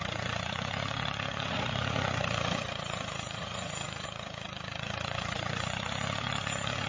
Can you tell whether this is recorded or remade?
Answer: remade